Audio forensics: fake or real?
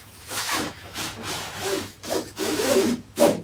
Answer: fake